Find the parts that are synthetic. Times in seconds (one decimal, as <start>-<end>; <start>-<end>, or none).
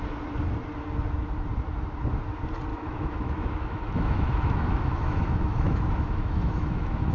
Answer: 2.7-7.1